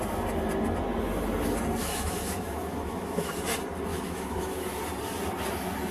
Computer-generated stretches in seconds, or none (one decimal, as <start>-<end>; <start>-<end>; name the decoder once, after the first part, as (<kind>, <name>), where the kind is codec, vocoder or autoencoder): 1.8-3.3 (autoencoder, DAC-VAE); 3.9-4.8